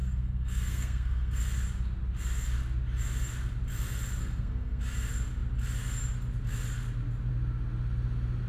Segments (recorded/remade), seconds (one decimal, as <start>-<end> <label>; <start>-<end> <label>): 0.0-1.4 remade; 1.4-4.2 recorded; 4.2-4.8 remade; 4.8-8.5 recorded